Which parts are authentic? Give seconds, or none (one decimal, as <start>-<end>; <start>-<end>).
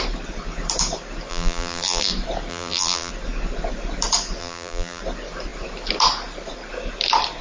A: 0.0-1.3; 2.1-2.5; 3.1-4.4; 5.0-7.4